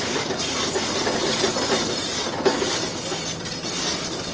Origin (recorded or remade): recorded